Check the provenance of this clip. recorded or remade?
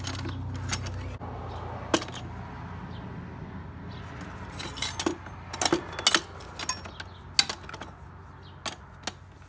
recorded